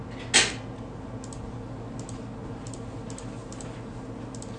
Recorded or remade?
recorded